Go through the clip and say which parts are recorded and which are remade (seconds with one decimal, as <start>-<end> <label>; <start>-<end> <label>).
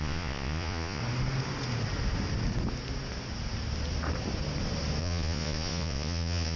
0.0-1.0 remade; 1.0-5.0 recorded; 5.0-6.6 remade